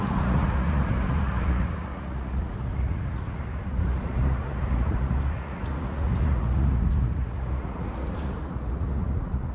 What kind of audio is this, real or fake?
fake